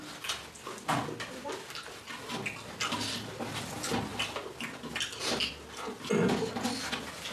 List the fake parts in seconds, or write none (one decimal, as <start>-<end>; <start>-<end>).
none